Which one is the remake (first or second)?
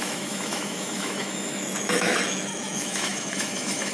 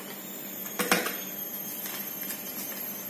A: first